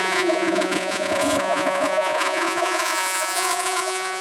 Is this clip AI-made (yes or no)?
yes